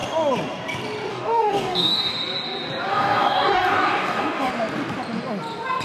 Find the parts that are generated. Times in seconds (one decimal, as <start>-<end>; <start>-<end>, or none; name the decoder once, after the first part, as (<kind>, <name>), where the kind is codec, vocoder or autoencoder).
1.1-2.1 (codec, DAC); 2.9-4.5